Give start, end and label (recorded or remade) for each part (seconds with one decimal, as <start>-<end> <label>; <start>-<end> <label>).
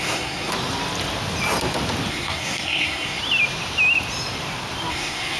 0.0-0.5 remade; 0.5-2.1 recorded; 2.1-3.2 remade; 3.2-4.9 recorded; 4.9-5.4 remade